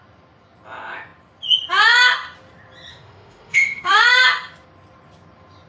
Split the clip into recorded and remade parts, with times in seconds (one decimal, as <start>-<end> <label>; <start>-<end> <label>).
0.0-2.9 recorded; 2.9-4.0 remade; 4.0-5.7 recorded